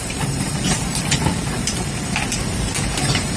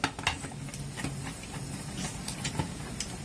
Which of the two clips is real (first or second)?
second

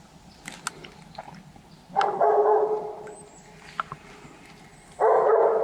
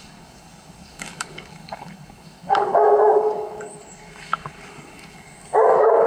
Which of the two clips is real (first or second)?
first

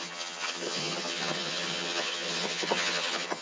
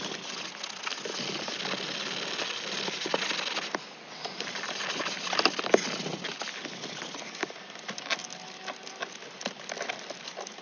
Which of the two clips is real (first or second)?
second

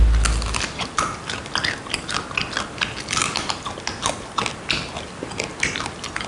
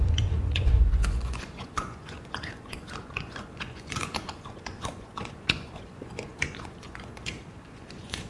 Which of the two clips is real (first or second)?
first